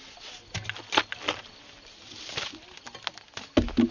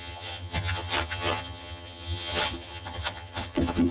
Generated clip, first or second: second